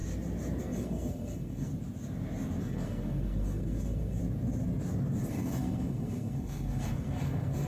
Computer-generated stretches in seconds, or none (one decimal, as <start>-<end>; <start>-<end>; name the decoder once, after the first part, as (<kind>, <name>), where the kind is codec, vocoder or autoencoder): 0.6-1.7 (codec, SNAC); 2.6-4.2; 5.3-7.7